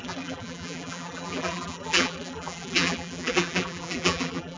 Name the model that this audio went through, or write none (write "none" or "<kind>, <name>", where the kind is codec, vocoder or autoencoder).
vocoder, BigVGAN v2